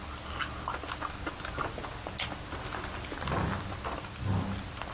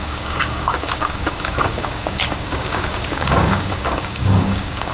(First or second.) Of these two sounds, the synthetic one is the second